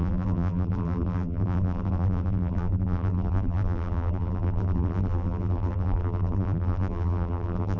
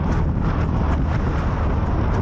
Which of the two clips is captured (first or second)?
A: second